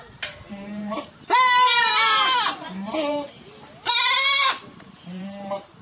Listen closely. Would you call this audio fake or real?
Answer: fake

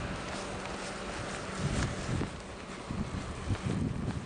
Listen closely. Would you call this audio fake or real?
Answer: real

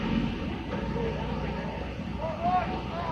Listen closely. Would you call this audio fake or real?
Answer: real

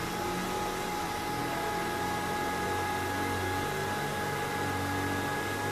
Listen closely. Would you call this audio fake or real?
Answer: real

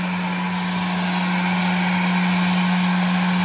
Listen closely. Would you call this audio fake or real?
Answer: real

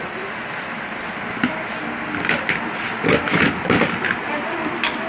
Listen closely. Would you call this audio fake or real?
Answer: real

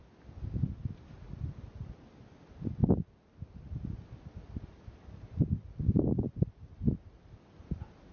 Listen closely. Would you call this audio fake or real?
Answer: real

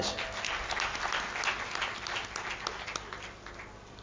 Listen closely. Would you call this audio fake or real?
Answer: real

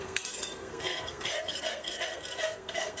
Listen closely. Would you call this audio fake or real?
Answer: fake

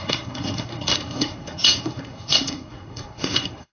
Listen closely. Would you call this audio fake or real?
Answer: fake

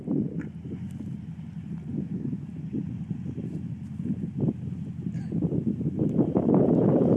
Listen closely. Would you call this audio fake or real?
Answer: real